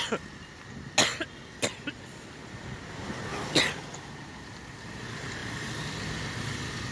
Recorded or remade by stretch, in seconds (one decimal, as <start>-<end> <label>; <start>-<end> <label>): 0.0-6.9 recorded